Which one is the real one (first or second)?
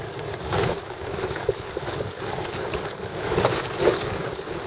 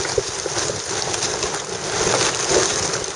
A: second